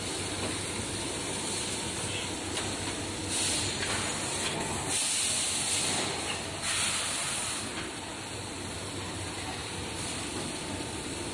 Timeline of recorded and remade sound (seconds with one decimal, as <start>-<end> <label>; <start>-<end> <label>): 0.0-8.1 recorded; 8.1-8.8 remade; 8.8-9.6 recorded; 9.6-11.3 remade